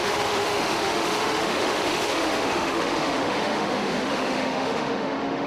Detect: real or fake fake